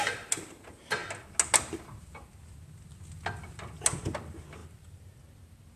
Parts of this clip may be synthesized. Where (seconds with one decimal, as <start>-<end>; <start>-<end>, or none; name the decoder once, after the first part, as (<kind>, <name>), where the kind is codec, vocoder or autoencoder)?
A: 4.6-5.2 (vocoder, BigVGAN v2)